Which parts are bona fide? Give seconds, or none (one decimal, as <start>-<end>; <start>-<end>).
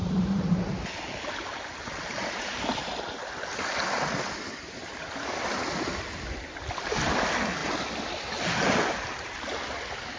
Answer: 3.0-10.2